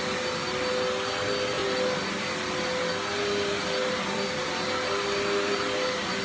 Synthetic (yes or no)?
no